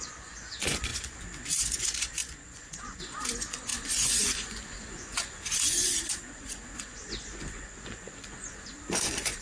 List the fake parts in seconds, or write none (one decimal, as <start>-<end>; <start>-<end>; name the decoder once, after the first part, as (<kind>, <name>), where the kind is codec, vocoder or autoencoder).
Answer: 0.0-9.4 (vocoder, Vocos)